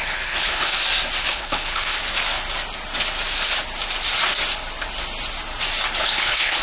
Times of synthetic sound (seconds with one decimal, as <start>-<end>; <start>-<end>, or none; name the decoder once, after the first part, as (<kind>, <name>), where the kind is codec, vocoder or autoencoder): 0.0-0.7 (codec, HILCodec); 1.3-2.0; 6.0-6.6